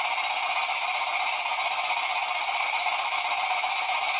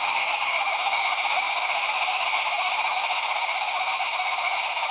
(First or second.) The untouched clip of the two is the first